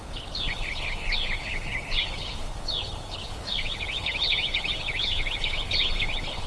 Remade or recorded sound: remade